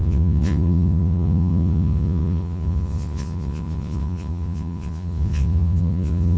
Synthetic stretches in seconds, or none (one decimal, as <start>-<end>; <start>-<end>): 0.0-6.4